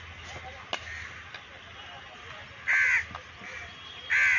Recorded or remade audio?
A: recorded